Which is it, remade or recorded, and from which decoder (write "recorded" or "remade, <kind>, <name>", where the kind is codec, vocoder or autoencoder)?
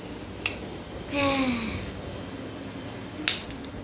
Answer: recorded